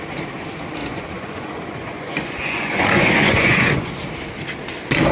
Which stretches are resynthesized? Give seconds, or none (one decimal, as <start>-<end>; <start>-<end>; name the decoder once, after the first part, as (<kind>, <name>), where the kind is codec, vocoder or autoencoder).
0.8-3.9 (vocoder, Vocos)